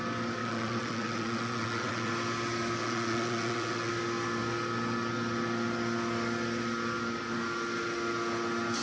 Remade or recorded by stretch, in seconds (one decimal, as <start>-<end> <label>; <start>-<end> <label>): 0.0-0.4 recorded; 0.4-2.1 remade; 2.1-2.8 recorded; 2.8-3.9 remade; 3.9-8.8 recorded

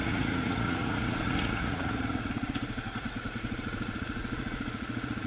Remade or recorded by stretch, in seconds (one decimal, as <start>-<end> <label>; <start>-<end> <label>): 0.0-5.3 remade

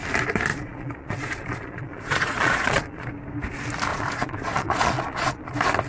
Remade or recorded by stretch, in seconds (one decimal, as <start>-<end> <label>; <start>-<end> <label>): 0.0-0.5 recorded; 0.5-3.1 remade; 3.1-3.9 recorded; 3.9-5.5 remade; 5.5-5.9 recorded

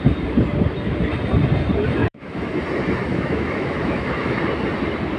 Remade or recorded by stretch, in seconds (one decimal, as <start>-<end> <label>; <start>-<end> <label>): 0.0-2.0 recorded; 2.0-2.6 remade; 2.6-3.1 recorded; 3.1-4.4 remade; 4.4-5.2 recorded

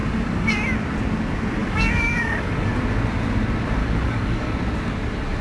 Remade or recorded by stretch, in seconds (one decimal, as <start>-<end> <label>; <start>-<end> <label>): 0.0-0.5 remade; 0.5-1.6 recorded; 1.6-2.7 remade; 2.7-3.8 recorded; 3.8-4.6 remade; 4.6-5.4 recorded